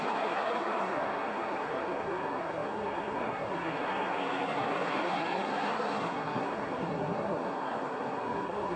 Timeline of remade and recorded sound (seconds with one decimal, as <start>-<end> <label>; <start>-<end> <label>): 0.0-8.8 remade